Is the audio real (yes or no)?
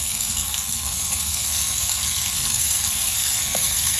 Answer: no